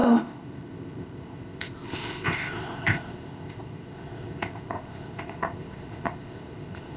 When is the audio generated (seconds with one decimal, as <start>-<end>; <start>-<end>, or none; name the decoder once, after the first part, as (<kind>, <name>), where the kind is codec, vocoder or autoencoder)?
0.0-7.0 (codec, ZipCodec)